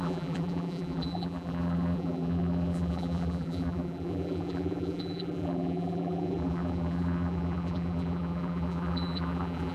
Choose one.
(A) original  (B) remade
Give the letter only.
B